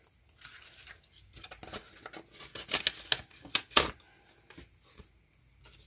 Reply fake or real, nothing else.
real